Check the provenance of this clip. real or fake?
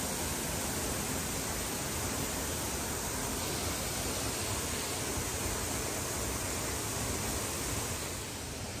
real